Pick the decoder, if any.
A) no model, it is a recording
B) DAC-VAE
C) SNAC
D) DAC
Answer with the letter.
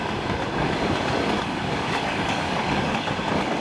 D